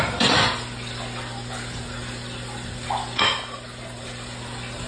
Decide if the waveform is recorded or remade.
recorded